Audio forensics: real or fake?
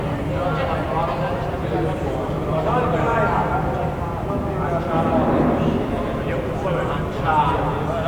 real